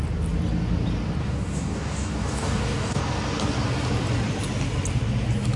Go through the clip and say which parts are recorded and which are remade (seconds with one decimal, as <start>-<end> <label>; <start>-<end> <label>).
0.0-1.2 recorded; 1.2-3.0 remade; 3.0-5.6 recorded